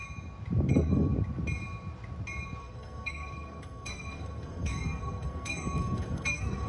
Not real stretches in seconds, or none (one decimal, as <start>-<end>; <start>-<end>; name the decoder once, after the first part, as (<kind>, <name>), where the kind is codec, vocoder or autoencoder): 0.7-1.1 (codec, SNAC); 2.6-6.7